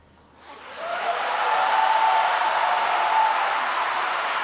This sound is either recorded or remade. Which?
recorded